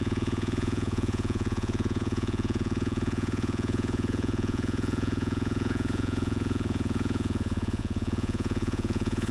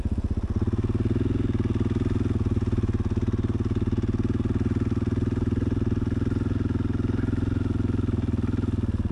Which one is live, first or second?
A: second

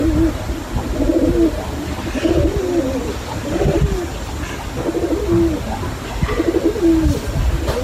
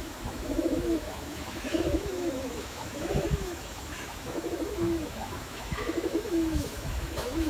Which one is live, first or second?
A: first